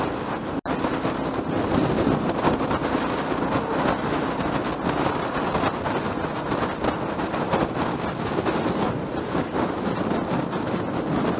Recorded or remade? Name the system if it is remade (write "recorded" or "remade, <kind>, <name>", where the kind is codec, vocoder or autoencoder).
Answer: recorded